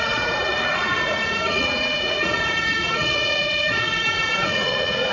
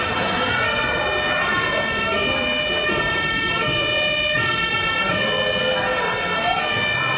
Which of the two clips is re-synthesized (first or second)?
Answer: first